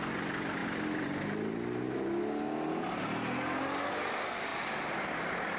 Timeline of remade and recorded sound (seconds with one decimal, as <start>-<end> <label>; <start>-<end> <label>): 0.0-5.6 recorded